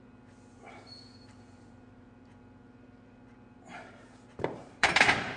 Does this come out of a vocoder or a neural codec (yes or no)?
yes